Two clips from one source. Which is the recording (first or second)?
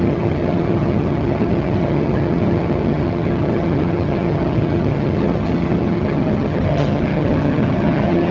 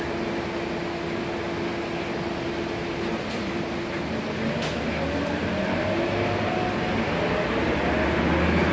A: second